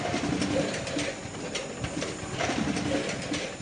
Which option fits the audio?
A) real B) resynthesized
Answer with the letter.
A